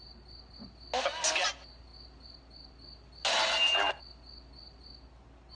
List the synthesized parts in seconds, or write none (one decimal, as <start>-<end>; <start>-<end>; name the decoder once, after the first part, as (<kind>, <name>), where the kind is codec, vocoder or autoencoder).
none

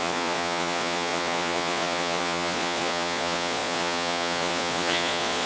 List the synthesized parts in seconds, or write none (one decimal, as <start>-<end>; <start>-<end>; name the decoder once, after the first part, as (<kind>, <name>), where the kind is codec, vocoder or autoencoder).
0.0-5.5 (vocoder, Vocos)